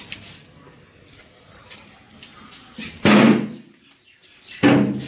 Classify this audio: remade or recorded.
recorded